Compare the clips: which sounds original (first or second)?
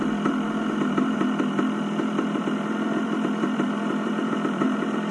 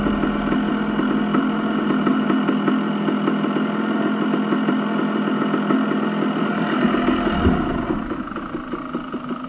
second